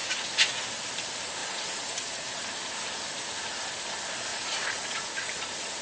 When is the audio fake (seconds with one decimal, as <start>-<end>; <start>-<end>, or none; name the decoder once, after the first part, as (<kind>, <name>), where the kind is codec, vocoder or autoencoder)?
0.0-0.6 (vocoder, Vocos); 1.4-2.4; 4.3-5.3